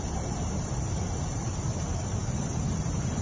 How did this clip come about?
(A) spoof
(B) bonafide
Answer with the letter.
B